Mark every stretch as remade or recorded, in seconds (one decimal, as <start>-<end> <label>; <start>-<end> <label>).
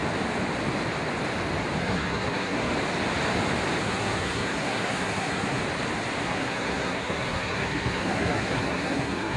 0.0-1.8 recorded; 1.8-2.7 remade; 2.7-3.8 recorded; 3.8-5.6 remade; 5.6-6.2 recorded; 6.2-9.4 remade